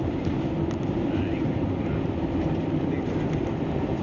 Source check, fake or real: real